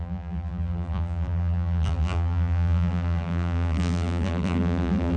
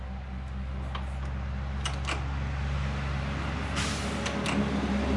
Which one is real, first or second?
second